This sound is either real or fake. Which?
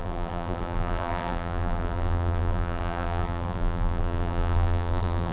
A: fake